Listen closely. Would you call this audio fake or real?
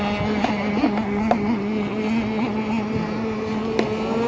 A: real